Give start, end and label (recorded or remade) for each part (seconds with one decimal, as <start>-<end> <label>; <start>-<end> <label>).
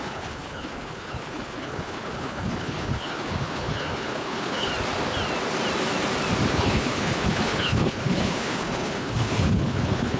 0.0-4.7 remade; 4.7-6.5 recorded; 6.5-10.2 remade